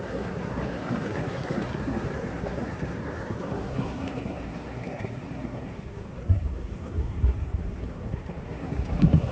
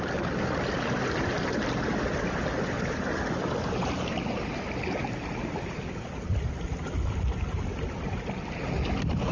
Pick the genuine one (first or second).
second